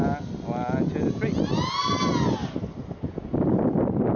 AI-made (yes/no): no